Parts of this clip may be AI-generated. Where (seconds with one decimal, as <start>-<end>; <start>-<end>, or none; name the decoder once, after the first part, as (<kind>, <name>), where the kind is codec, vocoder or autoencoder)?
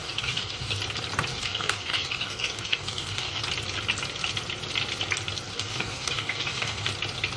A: 0.0-0.8 (codec, DAC); 1.3-3.4; 5.5-6.9